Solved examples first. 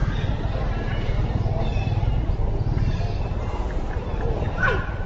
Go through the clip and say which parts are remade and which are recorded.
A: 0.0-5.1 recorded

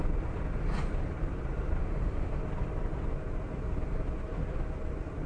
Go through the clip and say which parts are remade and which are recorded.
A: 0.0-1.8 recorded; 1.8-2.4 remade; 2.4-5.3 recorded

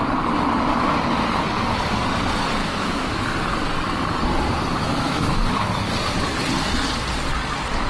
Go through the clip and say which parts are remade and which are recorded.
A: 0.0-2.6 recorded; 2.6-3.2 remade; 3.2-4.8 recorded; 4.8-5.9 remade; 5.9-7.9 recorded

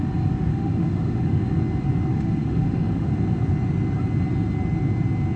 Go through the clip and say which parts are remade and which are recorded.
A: 0.0-0.5 recorded; 0.5-1.4 remade; 1.4-2.1 recorded; 2.1-3.1 remade; 3.1-5.4 recorded

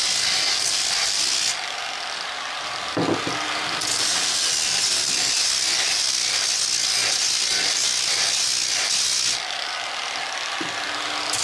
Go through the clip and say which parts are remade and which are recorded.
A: 0.0-11.4 recorded

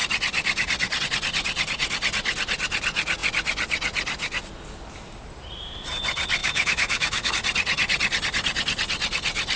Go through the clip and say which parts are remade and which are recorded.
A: 0.0-6.4 recorded; 6.4-7.3 remade; 7.3-9.6 recorded